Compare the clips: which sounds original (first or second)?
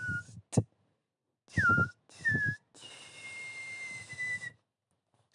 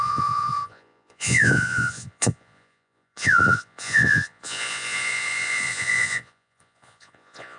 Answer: first